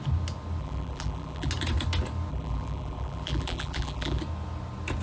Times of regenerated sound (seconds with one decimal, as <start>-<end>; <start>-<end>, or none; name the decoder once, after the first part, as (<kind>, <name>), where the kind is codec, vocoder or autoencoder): 0.6-1.5 (vocoder, BigVGAN v2); 2.3-4.2